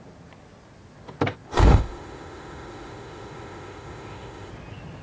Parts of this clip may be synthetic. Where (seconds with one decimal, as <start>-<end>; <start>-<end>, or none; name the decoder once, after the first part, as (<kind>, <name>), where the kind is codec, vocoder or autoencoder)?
1.5-4.5 (autoencoder, DAC-VAE)